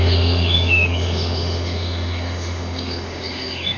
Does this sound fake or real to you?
fake